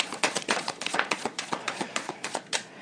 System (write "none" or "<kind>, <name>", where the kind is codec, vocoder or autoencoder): vocoder, Vocos